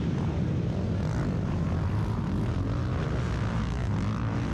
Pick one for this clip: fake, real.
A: real